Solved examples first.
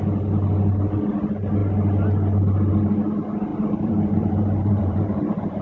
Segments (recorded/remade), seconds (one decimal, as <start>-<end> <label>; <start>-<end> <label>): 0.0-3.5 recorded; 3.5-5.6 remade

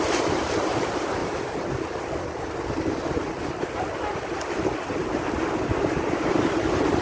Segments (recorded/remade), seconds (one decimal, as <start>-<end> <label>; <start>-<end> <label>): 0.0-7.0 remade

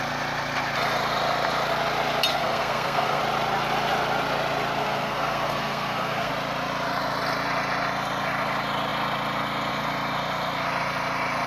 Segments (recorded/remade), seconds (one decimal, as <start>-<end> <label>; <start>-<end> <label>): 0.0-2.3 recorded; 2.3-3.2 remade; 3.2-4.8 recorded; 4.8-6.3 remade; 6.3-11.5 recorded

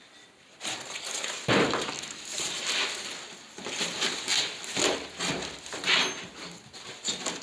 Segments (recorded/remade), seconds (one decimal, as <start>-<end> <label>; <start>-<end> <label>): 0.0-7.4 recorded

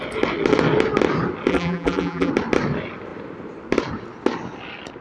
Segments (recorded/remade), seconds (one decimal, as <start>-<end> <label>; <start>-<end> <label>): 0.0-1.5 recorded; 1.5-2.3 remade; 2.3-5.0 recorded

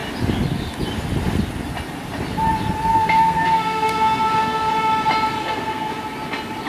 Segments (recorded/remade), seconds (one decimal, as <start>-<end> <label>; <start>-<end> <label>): 0.0-2.9 recorded; 2.9-4.7 remade; 4.7-5.4 recorded; 5.4-5.9 remade; 5.9-6.7 recorded

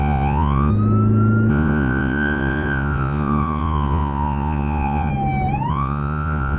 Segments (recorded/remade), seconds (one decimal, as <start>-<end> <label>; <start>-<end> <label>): 0.0-0.7 remade; 0.7-1.5 recorded; 1.5-5.1 remade; 5.1-5.7 recorded; 5.7-6.6 remade